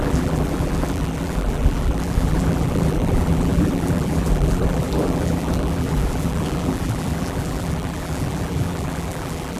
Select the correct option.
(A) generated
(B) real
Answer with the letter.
A